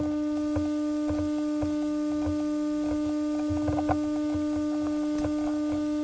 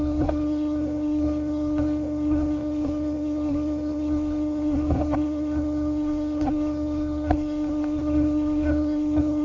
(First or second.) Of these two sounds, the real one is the first